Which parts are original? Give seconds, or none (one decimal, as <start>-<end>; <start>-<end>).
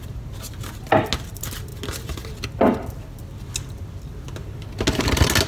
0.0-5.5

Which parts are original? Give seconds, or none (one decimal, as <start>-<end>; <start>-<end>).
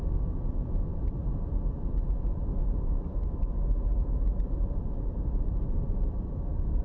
0.0-0.9; 1.6-2.6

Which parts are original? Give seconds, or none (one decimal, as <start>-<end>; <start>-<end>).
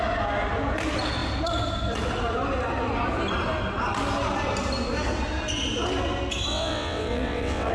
0.0-6.5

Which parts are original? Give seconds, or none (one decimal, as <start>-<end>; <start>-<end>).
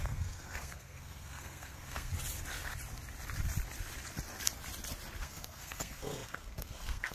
2.1-5.2